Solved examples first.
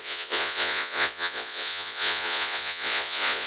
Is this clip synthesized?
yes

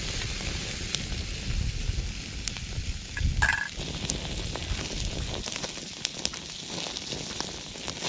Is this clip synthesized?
no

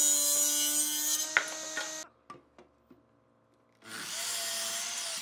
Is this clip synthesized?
no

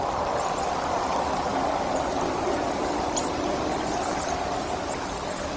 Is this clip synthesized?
no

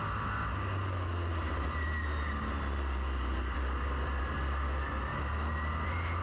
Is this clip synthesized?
no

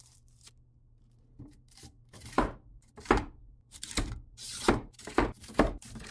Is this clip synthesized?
yes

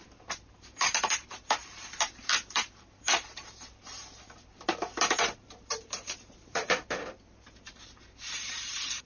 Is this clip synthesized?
yes